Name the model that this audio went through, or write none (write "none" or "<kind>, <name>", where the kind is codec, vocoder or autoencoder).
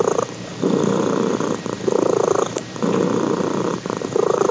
vocoder, BigVGAN v2